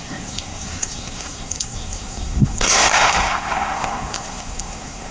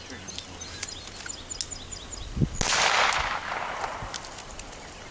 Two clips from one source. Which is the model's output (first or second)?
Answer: first